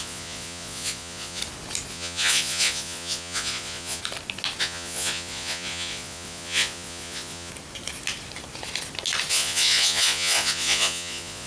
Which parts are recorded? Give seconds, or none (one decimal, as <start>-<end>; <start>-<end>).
1.4-1.9; 4.0-4.6; 7.5-9.3